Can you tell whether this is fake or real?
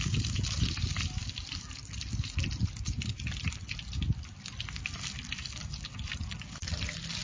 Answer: real